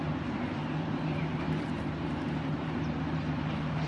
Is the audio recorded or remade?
remade